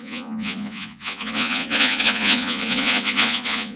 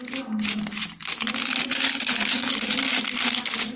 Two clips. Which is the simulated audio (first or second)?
first